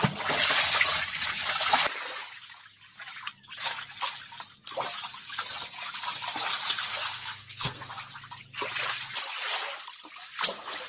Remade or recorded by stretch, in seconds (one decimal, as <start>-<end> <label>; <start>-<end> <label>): 0.0-6.9 recorded; 6.9-7.9 remade; 7.9-10.9 recorded